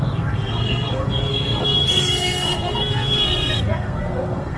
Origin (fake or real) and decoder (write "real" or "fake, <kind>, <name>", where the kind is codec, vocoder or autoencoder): fake, codec, SNAC